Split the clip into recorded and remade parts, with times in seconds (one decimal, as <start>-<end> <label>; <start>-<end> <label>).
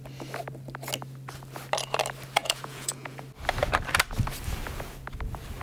0.0-2.4 recorded; 2.4-3.2 remade; 3.2-5.6 recorded